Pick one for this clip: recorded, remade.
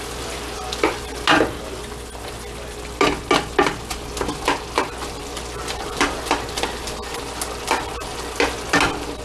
recorded